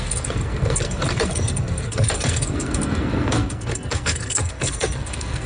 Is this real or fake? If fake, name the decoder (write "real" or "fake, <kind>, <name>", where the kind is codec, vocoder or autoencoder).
fake, codec, SNAC